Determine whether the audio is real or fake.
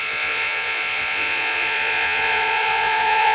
fake